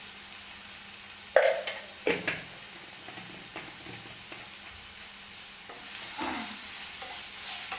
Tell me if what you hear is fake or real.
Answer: real